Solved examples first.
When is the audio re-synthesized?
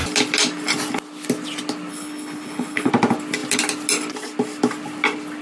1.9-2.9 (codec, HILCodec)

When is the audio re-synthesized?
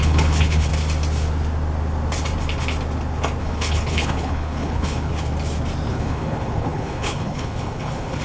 0.0-0.7 (codec, HILCodec); 3.4-5.1; 5.9-8.2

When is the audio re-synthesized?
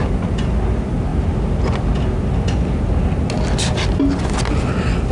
none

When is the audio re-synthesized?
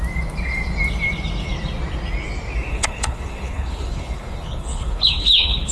2.7-5.7 (codec, HILCodec)